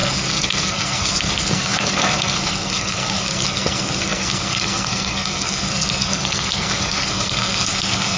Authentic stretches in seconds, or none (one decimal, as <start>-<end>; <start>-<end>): none